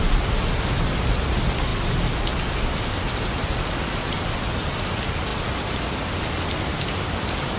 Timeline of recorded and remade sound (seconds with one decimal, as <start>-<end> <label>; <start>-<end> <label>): 0.0-7.6 recorded